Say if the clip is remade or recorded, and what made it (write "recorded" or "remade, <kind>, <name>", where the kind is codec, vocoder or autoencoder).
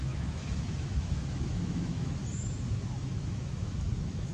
remade, autoencoder, DAC-VAE